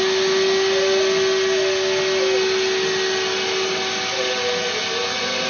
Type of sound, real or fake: real